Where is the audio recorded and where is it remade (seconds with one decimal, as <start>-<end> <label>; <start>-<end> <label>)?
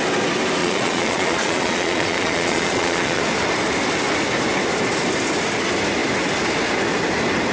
0.0-0.6 recorded; 0.6-3.2 remade; 3.2-7.5 recorded